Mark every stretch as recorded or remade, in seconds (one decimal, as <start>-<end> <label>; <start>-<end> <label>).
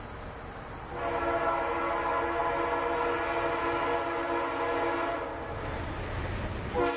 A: 0.0-7.0 recorded